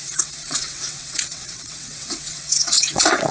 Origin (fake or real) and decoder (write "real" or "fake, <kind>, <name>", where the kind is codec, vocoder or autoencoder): fake, vocoder, WaveNeXt